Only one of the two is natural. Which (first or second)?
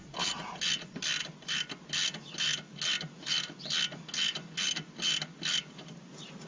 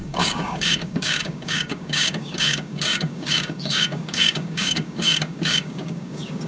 first